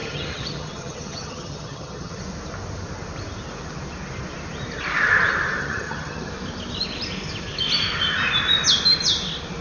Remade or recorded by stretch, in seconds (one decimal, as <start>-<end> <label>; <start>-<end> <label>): 0.0-2.2 remade; 2.2-5.6 recorded; 5.6-6.3 remade; 6.3-9.6 recorded